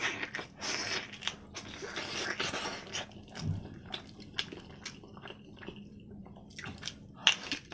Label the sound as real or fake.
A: real